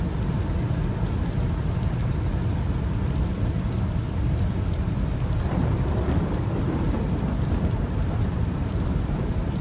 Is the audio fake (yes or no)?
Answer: yes